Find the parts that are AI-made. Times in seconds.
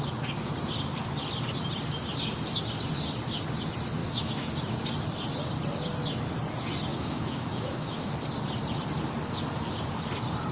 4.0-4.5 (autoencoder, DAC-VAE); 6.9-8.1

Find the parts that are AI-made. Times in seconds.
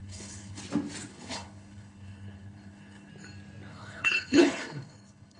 0.0-0.6 (codec, HILCodec); 1.1-3.1; 3.7-5.4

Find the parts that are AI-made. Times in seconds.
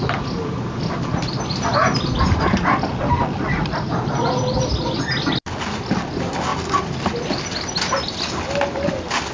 none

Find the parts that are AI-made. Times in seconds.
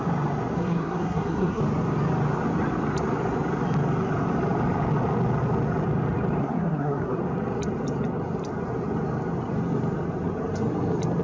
0.6-1.6 (codec, SNAC); 6.4-7.2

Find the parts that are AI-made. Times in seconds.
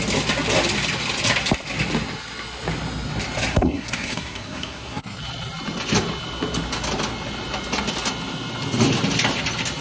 3.5-5.2 (codec, SNAC)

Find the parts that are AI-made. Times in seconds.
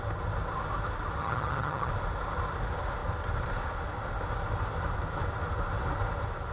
1.2-1.9 (vocoder, HiFi-GAN)